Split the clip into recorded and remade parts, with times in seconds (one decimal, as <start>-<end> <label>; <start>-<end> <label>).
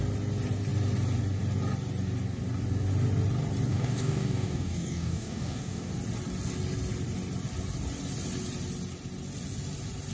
0.0-3.7 recorded; 3.7-5.9 remade; 5.9-10.1 recorded